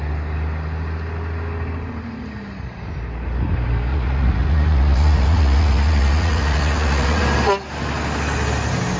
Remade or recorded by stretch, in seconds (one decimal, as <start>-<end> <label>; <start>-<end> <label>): 0.0-3.9 recorded; 3.9-7.2 remade; 7.2-9.0 recorded